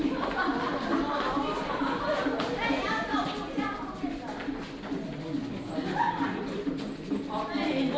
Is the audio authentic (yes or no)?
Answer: yes